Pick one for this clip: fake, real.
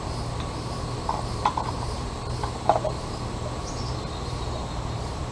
fake